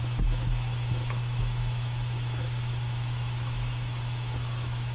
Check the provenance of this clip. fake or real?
fake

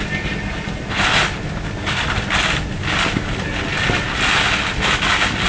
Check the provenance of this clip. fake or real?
real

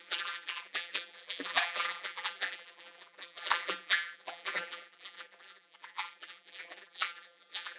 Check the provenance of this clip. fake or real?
fake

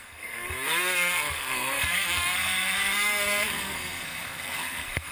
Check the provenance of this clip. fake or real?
fake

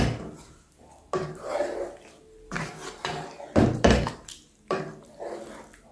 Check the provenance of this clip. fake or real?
real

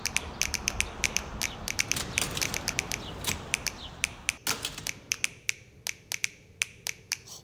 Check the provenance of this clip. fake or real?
real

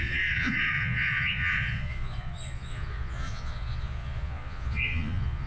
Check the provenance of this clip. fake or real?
fake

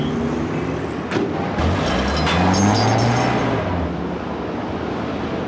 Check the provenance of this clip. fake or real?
real